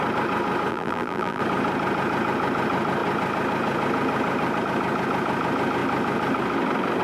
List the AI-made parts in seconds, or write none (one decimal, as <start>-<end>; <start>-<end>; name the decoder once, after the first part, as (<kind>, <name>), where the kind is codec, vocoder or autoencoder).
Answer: 0.7-1.4 (vocoder, BigVGAN v2)